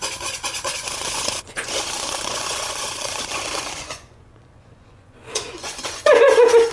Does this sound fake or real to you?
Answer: fake